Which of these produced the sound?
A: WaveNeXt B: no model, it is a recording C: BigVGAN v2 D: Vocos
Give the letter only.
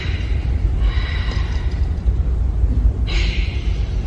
C